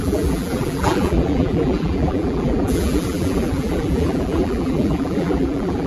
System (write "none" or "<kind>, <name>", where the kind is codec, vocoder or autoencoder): vocoder, BigVGAN v2